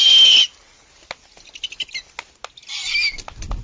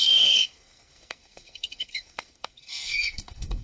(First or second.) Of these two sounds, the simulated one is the second